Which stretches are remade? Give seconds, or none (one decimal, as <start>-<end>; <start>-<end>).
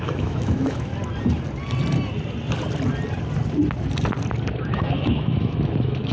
0.0-0.9; 4.6-6.1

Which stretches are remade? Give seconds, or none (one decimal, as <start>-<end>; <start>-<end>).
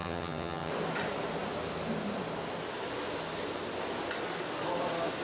0.0-0.7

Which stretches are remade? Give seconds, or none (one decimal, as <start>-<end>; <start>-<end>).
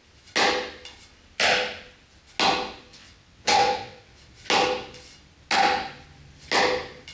2.9-4.2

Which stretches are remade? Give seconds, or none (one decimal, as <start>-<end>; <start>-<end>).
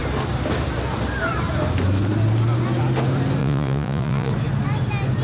3.4-4.3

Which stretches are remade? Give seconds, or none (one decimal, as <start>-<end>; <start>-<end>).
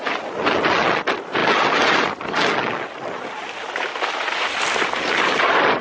3.9-5.0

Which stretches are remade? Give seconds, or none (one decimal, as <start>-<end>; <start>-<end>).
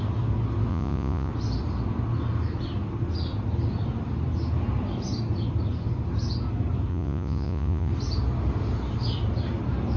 0.7-1.3; 6.9-7.9